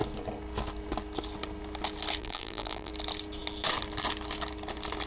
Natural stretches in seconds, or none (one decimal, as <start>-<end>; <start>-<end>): 0.0-2.2; 2.9-5.1